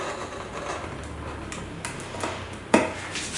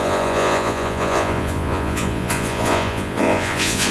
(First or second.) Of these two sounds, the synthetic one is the second